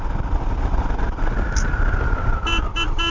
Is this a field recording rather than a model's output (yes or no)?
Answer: yes